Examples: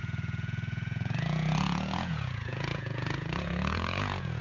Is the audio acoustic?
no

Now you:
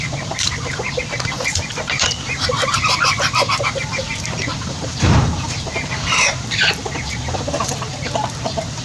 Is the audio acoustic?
no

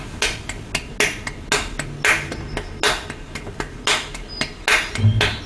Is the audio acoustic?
yes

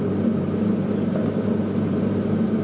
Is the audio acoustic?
no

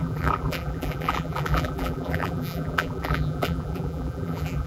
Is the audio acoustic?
no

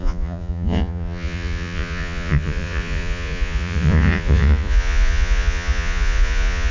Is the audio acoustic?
no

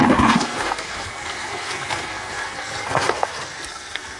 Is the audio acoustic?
no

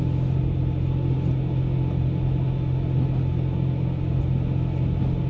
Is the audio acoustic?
yes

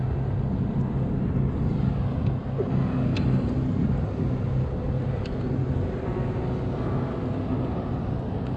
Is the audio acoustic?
yes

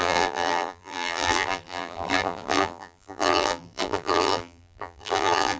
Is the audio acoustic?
no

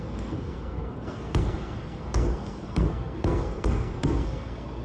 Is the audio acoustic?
no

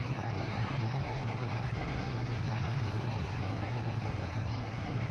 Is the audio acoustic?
no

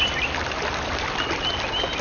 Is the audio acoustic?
yes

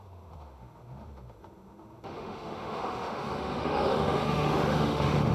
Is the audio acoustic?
no